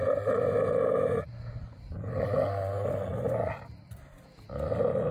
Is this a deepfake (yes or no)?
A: no